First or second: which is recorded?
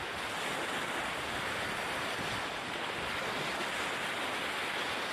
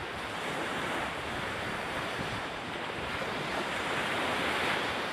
first